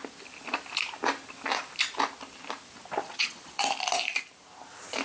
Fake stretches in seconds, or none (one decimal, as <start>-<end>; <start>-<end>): 3.0-3.6